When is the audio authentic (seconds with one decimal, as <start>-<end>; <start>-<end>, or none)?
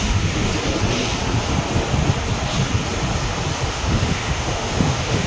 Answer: 0.5-3.7